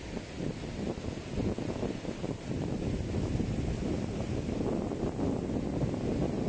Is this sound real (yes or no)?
yes